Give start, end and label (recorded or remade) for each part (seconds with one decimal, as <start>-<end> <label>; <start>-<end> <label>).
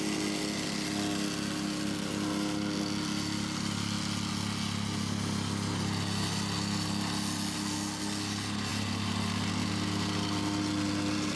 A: 0.0-11.4 recorded